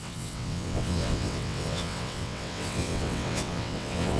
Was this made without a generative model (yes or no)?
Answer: no